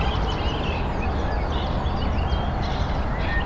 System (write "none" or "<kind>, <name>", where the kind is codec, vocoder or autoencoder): none